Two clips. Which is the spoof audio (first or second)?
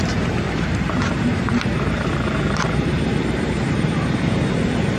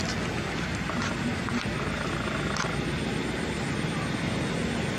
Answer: first